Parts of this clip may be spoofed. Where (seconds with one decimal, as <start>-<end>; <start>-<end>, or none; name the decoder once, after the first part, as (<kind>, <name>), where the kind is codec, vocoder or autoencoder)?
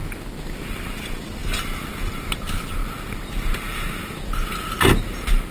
none